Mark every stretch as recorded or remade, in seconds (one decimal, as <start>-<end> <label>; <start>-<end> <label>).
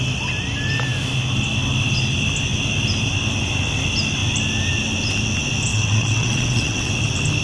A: 0.0-5.7 recorded; 5.7-6.9 remade; 6.9-7.4 recorded